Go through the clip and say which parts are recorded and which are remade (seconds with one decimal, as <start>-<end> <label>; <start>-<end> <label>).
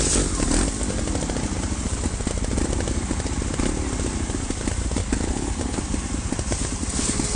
0.0-5.0 recorded; 5.0-5.8 remade; 5.8-7.4 recorded